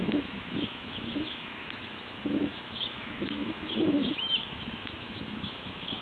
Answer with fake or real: fake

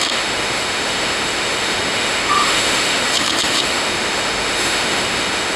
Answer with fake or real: fake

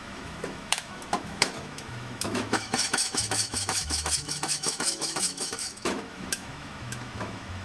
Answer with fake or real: fake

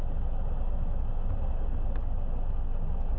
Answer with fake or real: real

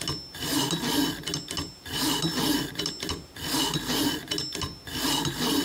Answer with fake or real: real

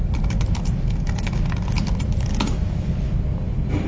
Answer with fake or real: real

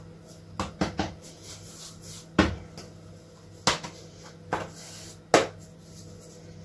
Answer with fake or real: real